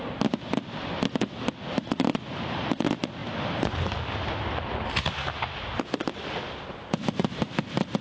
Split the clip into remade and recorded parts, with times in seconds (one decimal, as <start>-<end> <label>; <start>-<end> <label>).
0.0-8.0 recorded